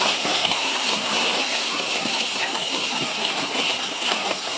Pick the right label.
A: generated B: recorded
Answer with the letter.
A